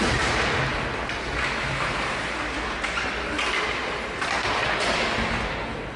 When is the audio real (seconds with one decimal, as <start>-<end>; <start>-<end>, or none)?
0.0-6.0